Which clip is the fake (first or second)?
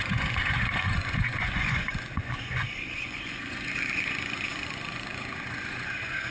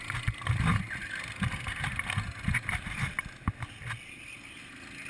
first